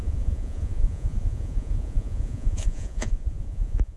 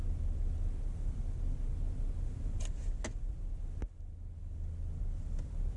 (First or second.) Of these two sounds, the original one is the second